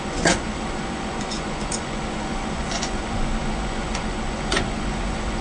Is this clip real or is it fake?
fake